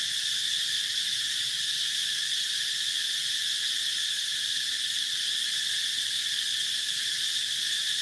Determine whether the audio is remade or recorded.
recorded